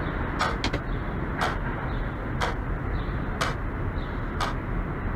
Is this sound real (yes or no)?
yes